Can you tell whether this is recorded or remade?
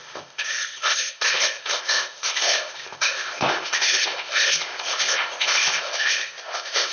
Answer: remade